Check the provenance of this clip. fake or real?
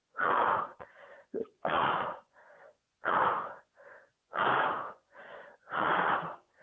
fake